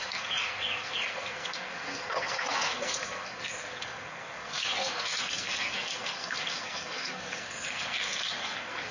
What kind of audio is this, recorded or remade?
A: remade